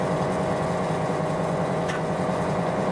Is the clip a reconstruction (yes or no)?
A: yes